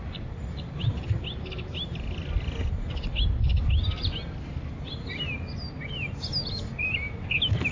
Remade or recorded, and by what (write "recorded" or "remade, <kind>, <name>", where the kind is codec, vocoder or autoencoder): recorded